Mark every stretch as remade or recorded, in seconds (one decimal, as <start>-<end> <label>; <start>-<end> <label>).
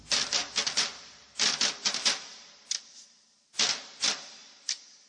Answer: 0.0-2.3 recorded; 2.3-3.4 remade; 3.4-4.4 recorded; 4.4-5.1 remade